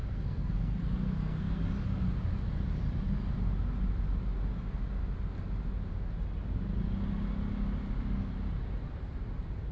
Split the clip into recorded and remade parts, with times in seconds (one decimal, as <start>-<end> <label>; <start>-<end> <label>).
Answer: 0.0-1.6 remade; 1.6-9.7 recorded